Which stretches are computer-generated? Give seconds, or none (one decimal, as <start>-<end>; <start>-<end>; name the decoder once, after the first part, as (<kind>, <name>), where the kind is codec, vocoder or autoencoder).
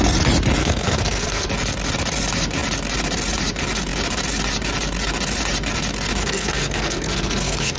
0.6-1.5 (codec, SNAC); 6.2-7.8